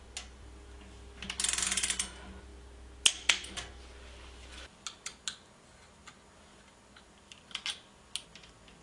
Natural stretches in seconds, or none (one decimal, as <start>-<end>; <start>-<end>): 0.0-8.8